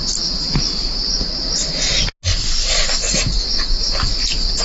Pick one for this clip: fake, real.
real